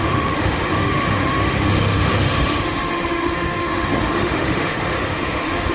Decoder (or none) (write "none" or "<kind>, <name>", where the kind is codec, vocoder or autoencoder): autoencoder, DAC-VAE